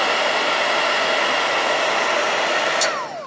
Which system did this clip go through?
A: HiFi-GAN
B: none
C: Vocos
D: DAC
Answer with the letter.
B